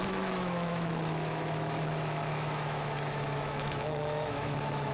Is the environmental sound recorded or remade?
remade